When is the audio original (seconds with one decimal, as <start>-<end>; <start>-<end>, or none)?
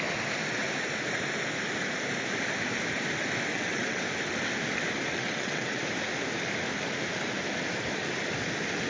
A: 0.0-3.5; 4.0-5.1; 5.8-8.9